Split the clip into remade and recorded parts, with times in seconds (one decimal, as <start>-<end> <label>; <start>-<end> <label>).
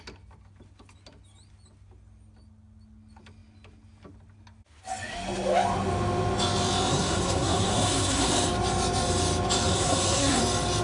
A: 0.0-6.9 recorded; 6.9-8.3 remade; 8.3-9.7 recorded; 9.7-10.4 remade; 10.4-10.8 recorded